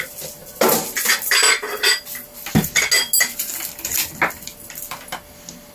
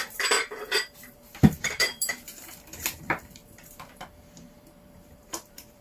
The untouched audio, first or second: first